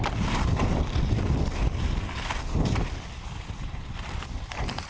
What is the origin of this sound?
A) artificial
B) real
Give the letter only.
A